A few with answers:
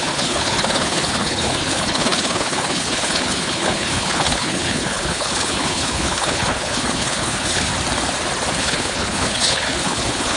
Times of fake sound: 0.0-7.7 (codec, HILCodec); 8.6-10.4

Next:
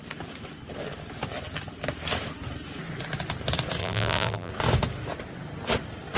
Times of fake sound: 3.8-4.5 (vocoder, BigVGAN v2)

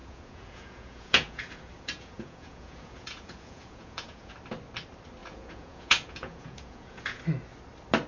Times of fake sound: 0.0-4.3 (vocoder, Vocos); 5.2-7.2

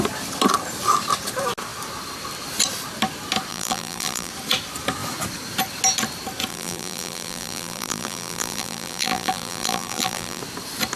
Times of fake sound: 3.5-4.3 (vocoder, BigVGAN v2); 6.5-10.4